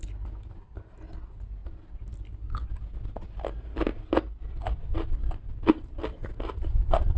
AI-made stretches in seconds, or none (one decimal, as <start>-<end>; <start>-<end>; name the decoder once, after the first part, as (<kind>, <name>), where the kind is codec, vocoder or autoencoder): none

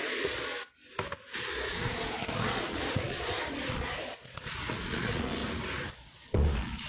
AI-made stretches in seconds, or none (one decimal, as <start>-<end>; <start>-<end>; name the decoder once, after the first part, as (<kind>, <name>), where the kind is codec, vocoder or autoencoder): 0.0-0.5 (vocoder, Vocos); 1.3-5.4; 5.9-6.9

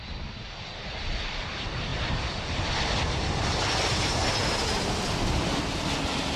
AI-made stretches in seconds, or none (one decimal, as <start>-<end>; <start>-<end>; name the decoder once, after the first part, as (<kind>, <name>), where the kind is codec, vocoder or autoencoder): none

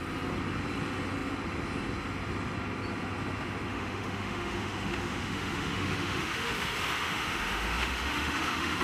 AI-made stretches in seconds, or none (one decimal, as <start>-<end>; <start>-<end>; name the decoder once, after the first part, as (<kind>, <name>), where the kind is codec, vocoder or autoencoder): 3.7-8.8 (autoencoder, DAC-VAE)

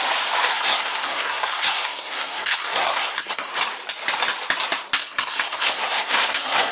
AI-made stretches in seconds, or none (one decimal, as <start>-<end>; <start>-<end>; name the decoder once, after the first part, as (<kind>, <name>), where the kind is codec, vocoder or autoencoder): 0.5-3.5 (codec, SNAC); 5.0-6.7